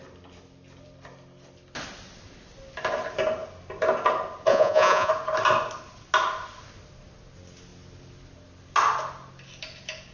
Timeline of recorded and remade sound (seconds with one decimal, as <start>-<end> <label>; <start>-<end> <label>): 0.0-4.5 recorded; 4.5-5.1 remade; 5.1-10.1 recorded